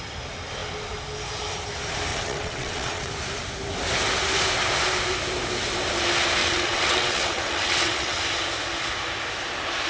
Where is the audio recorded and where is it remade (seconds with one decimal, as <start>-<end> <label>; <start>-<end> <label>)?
0.0-2.1 recorded; 2.1-3.1 remade; 3.1-6.4 recorded; 6.4-8.2 remade; 8.2-9.9 recorded